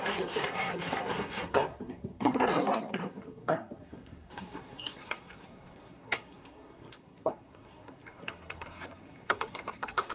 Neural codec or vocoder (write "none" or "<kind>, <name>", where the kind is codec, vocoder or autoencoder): codec, SNAC